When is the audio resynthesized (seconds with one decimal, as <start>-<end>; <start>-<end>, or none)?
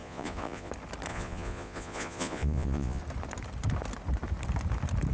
0.0-0.7; 1.1-3.0